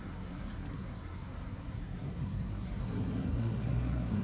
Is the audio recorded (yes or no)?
no